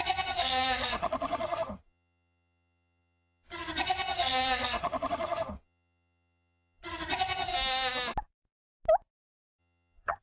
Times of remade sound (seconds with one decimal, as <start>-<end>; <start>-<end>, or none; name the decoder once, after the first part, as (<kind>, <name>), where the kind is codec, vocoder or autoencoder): 0.0-7.5 (vocoder, HiFi-GAN); 9.6-10.2